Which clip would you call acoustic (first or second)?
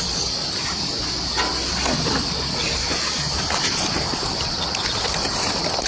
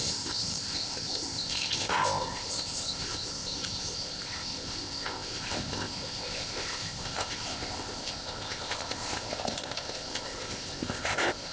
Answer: first